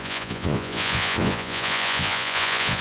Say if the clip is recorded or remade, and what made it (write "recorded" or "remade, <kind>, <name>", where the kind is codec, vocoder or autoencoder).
remade, vocoder, Vocos